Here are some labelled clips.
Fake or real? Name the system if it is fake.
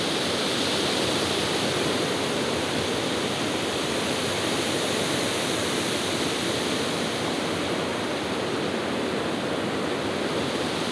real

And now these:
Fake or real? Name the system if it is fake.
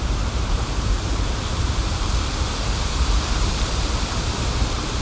fake, vocoder, BigVGAN v2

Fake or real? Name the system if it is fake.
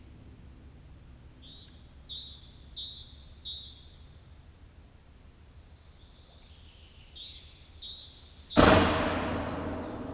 real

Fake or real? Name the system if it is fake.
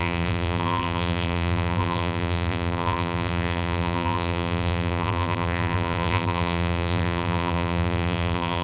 fake, vocoder, BigVGAN v2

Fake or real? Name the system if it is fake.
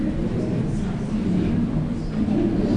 real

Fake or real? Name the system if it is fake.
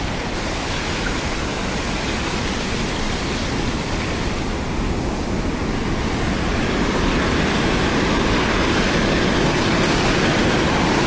real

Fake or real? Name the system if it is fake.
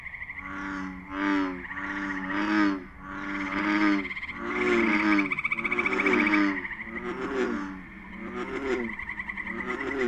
real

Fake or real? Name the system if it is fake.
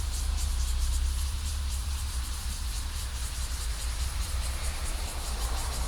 fake, vocoder, BigVGAN v2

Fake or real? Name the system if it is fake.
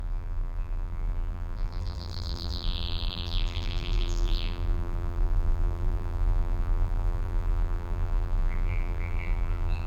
fake, vocoder, BigVGAN v2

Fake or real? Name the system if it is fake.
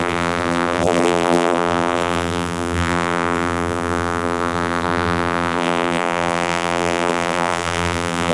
fake, vocoder, BigVGAN v2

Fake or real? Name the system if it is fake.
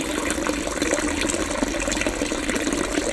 real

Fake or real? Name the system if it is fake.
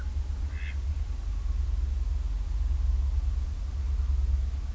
real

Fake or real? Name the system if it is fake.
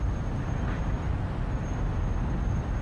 real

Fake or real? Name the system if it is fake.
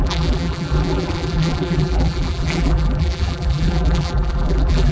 fake, vocoder, BigVGAN v2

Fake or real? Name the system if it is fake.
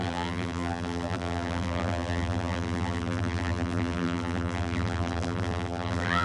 fake, vocoder, BigVGAN v2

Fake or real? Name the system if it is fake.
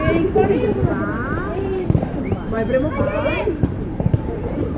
fake, vocoder, BigVGAN v2